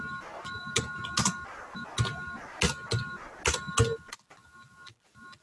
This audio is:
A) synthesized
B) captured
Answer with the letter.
B